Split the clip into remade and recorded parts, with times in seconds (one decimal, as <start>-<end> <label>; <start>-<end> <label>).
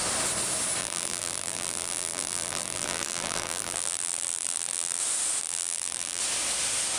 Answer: 0.0-0.8 recorded; 0.8-5.0 remade; 5.0-5.4 recorded; 5.4-6.2 remade; 6.2-7.0 recorded